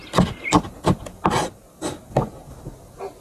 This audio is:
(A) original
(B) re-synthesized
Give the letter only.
A